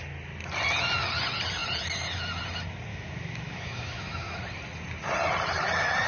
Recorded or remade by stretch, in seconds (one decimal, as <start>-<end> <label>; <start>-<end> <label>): 0.0-2.9 recorded; 2.9-4.4 remade; 4.4-6.1 recorded